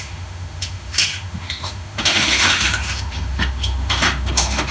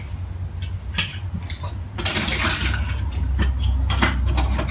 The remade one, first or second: first